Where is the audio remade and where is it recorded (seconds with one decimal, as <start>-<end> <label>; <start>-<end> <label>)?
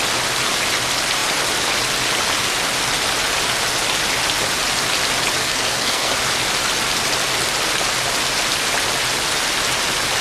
0.0-5.4 recorded; 5.4-6.1 remade; 6.1-10.2 recorded